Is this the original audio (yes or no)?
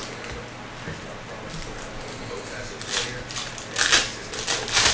yes